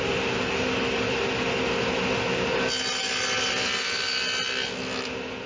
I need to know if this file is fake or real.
real